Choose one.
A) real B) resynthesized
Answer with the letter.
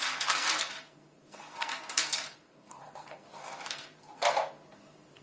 B